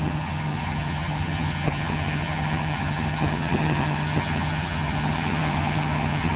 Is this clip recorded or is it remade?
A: remade